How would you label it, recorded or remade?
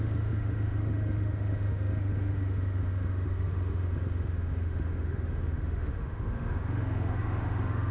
remade